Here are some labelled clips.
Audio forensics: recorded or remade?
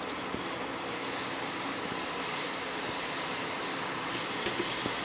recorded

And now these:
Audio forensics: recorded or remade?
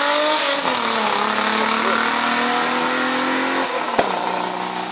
recorded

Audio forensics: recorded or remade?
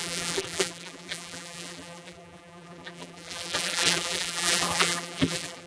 remade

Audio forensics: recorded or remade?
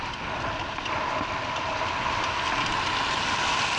recorded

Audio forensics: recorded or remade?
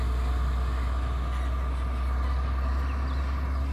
recorded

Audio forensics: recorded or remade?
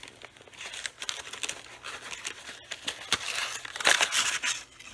recorded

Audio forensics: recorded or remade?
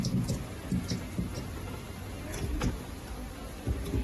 recorded